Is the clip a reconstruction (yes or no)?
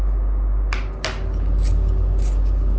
no